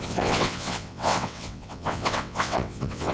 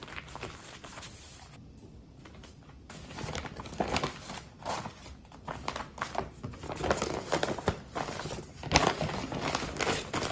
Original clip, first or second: second